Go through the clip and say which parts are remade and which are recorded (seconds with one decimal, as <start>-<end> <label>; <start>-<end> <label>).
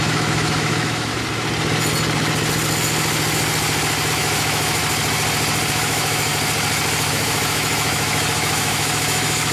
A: 0.0-1.1 remade; 1.1-4.1 recorded; 4.1-4.8 remade; 4.8-5.7 recorded; 5.7-6.3 remade; 6.3-7.1 recorded; 7.1-9.5 remade